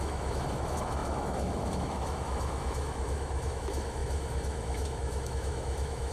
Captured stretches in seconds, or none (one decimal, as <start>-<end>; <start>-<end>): none